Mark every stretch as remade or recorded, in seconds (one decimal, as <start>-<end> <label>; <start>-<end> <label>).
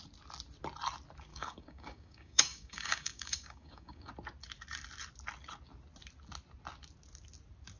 0.0-1.3 recorded; 1.3-4.1 remade; 4.1-7.8 recorded